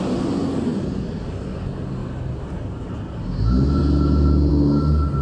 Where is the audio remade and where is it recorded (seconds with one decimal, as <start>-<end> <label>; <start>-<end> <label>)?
0.0-5.2 recorded